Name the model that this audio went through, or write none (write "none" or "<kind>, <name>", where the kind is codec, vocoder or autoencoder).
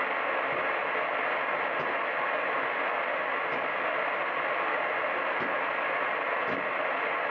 none